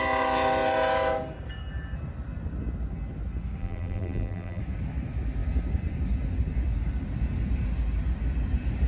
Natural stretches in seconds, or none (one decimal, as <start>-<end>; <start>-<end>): 0.0-3.6; 4.6-8.9